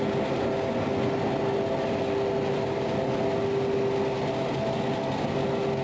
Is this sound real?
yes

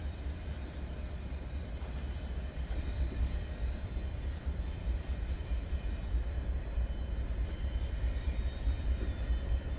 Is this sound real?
no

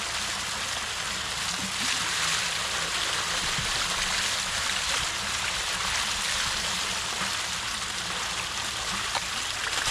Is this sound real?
yes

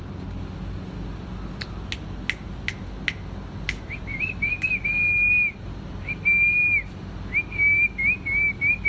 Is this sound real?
yes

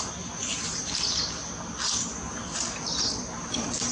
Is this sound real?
no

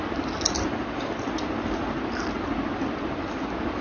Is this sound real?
yes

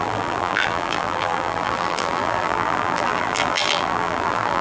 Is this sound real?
no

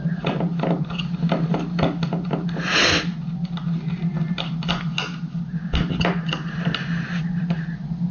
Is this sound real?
yes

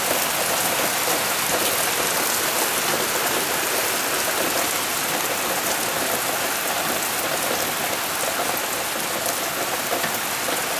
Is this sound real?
yes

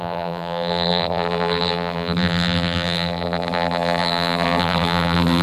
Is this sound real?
no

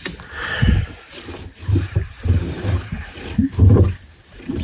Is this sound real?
no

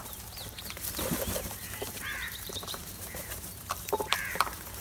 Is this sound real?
no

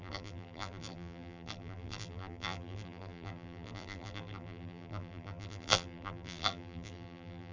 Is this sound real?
no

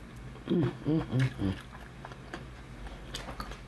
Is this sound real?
yes